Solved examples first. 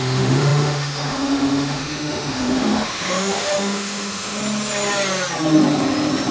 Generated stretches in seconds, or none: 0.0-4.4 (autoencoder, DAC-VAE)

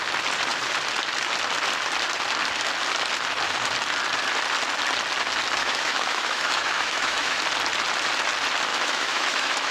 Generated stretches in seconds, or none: 5.6-7.4 (autoencoder, DAC-VAE); 8.7-9.7

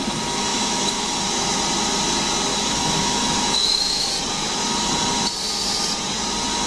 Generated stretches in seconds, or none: 0.5-1.6 (autoencoder, DAC-VAE); 2.5-4.1

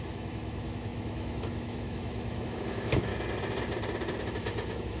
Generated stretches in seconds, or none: 0.0-3.1 (autoencoder, DAC-VAE); 4.2-5.0

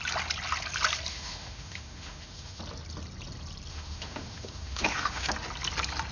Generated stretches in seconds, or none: 1.1-2.6 (autoencoder, DAC-VAE); 3.7-5.3

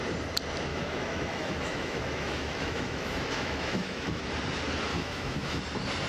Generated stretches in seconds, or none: 0.7-4.2 (autoencoder, DAC-VAE); 4.9-5.6

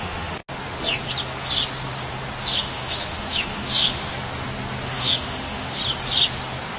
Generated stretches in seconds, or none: 0.0-0.4 (autoencoder, DAC-VAE); 2.6-4.0; 4.8-5.8